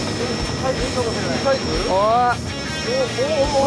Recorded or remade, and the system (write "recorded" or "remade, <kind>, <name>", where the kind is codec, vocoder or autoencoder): recorded